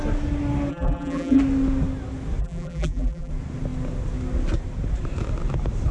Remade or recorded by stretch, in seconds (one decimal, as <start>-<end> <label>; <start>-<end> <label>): 0.0-0.7 recorded; 0.7-1.4 remade; 1.4-2.4 recorded; 2.4-3.3 remade; 3.3-5.9 recorded